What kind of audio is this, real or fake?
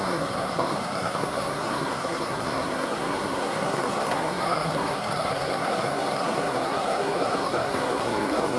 fake